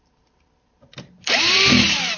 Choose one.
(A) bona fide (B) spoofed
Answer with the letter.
B